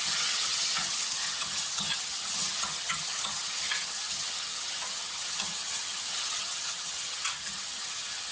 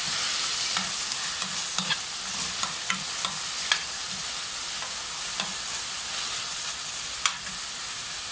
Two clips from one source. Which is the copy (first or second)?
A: first